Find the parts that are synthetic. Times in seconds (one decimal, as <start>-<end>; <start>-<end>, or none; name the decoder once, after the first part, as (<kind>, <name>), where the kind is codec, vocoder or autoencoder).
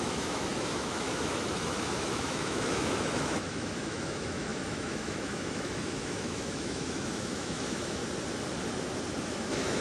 0.0-8.0 (autoencoder, DAC-VAE); 9.2-9.8